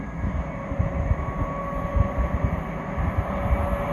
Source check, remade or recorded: recorded